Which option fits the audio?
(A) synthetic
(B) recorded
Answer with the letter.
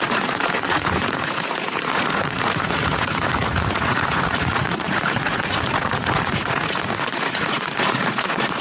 A